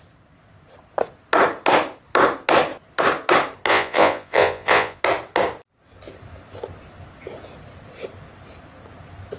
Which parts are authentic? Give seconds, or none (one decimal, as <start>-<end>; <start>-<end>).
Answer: 0.0-3.7; 5.0-9.4